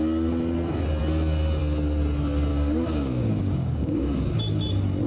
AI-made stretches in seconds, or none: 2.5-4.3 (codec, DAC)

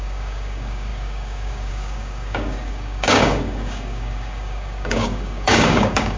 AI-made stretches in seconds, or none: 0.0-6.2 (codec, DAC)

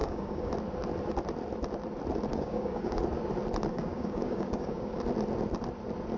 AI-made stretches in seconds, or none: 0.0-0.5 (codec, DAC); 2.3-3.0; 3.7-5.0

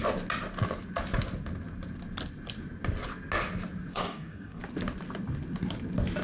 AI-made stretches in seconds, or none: 3.9-4.6 (codec, DAC)

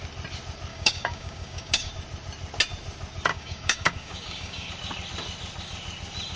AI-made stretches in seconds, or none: 0.7-1.9 (codec, DAC); 3.3-4.7